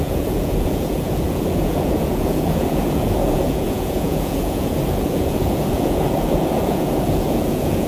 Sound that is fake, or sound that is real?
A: fake